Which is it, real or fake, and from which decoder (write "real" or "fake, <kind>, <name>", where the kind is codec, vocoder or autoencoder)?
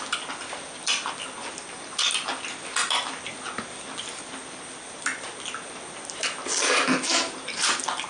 real